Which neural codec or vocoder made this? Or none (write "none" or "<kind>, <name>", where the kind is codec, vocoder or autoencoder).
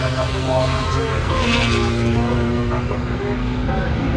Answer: codec, SNAC